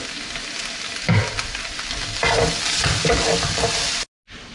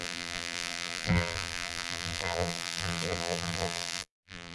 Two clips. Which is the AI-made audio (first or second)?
second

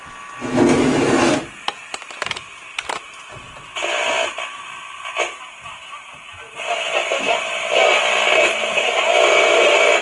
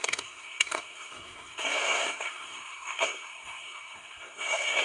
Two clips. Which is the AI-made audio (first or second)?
second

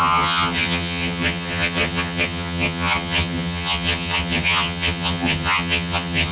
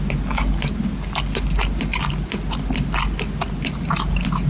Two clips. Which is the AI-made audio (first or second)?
first